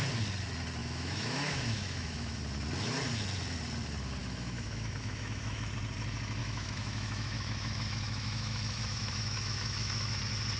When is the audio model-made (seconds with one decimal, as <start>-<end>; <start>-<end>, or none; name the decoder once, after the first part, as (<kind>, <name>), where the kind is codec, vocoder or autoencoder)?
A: 0.8-2.4 (autoencoder, DAC-VAE); 4.2-5.7; 6.4-10.2